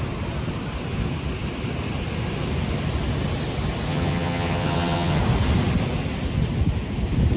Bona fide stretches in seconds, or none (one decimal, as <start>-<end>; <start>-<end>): 0.0-3.9; 5.2-7.4